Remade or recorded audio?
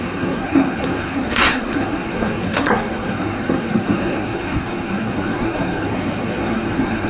remade